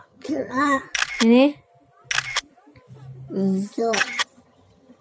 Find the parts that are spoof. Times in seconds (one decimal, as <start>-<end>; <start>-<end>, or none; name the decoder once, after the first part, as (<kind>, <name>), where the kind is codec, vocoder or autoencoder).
0.0-0.8 (vocoder, HiFi-GAN); 3.8-5.0